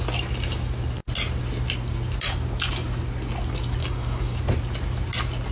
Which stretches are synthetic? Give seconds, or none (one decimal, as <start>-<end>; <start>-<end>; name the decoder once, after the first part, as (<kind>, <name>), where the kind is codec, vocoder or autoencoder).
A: 3.8-4.4 (codec, DAC)